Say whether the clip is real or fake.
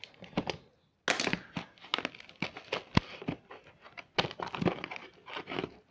real